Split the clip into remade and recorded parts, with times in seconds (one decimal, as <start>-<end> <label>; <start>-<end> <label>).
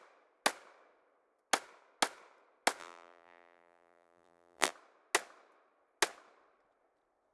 0.0-2.8 recorded; 2.8-4.7 remade; 4.7-7.3 recorded